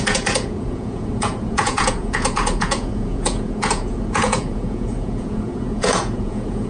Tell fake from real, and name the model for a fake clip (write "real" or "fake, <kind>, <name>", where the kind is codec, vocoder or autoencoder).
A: fake, vocoder, Vocos